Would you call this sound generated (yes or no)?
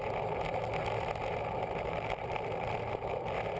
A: no